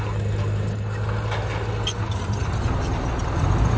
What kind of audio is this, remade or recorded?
recorded